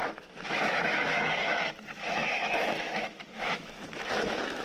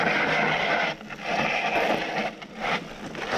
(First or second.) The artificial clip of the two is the first